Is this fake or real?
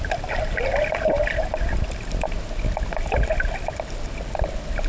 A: real